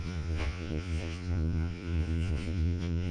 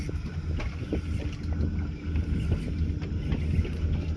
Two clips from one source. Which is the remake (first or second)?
first